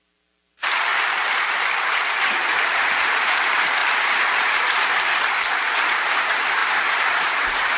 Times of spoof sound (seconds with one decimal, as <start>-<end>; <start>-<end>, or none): 0.0-0.9; 3.0-3.8; 6.1-7.8